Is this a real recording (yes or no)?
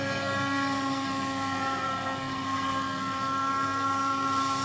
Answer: no